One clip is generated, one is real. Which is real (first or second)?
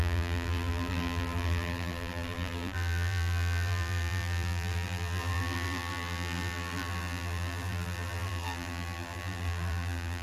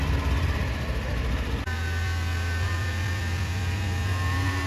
second